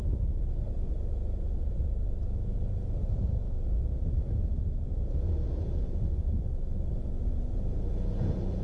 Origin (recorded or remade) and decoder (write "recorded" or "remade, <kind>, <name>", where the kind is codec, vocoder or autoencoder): remade, vocoder, Vocos